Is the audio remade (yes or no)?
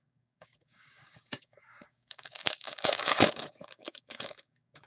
yes